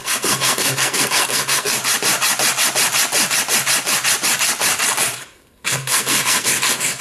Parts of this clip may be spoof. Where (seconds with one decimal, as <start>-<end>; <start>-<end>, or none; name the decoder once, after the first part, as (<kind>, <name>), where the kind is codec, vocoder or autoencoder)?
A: 0.0-1.8 (codec, SNAC); 5.2-7.0